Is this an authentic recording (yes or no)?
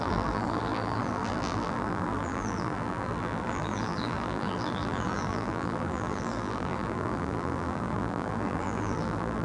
no